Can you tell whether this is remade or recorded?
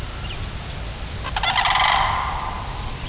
recorded